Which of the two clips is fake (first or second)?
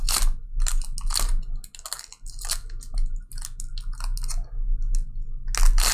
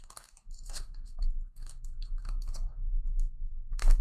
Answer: second